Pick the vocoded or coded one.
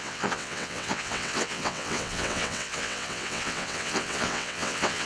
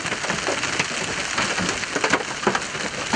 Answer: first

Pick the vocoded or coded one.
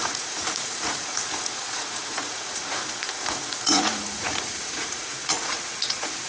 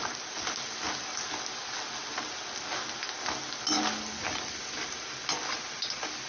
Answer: first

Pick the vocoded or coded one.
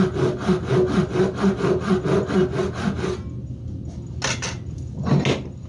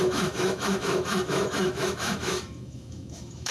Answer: second